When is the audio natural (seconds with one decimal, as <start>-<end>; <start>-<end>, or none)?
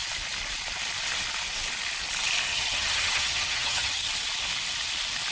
0.0-2.5; 4.1-5.3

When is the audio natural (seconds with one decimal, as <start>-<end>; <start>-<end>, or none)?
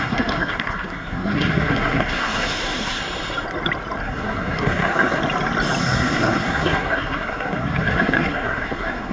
3.0-4.0; 5.2-5.8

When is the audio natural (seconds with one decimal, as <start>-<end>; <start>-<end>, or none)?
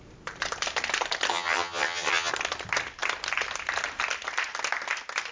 0.0-1.3; 2.3-5.3